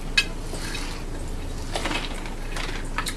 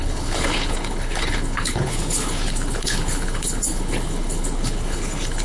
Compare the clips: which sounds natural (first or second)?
first